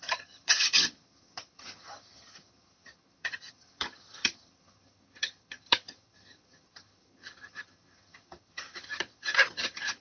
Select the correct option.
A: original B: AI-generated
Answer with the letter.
B